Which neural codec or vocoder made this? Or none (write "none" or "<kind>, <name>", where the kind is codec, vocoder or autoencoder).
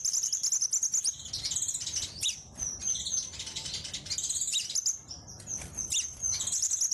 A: none